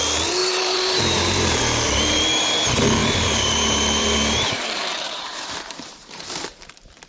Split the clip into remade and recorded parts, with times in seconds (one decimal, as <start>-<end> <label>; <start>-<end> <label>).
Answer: 0.0-0.4 recorded; 0.4-1.6 remade; 1.6-3.0 recorded; 3.0-6.2 remade; 6.2-7.1 recorded